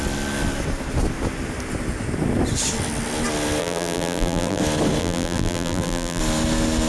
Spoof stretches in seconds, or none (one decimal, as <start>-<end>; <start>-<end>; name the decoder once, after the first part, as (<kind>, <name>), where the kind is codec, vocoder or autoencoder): 3.6-4.6 (vocoder, BigVGAN v2); 5.0-6.2